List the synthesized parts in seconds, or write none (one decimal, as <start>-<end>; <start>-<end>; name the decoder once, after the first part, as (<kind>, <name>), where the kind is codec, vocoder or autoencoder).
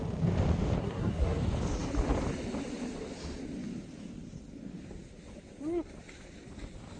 0.8-1.4 (codec, SNAC)